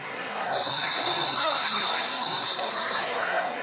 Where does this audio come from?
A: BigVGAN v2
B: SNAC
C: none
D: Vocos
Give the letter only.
B